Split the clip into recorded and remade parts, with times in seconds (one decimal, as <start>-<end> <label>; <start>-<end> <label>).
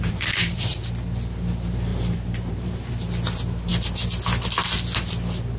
0.0-0.7 remade; 0.7-1.9 recorded; 1.9-2.9 remade; 2.9-5.6 recorded